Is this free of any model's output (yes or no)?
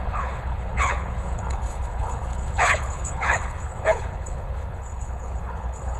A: no